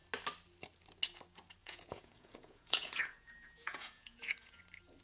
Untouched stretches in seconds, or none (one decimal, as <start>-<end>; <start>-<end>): 0.0-1.6; 4.6-5.0